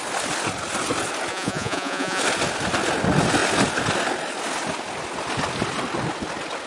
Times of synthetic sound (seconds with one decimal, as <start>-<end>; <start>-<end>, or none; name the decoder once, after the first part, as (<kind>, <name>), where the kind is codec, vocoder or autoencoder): 1.3-2.2 (vocoder, Vocos)